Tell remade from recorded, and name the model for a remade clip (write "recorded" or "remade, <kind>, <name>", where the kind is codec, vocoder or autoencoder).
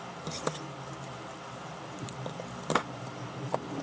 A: recorded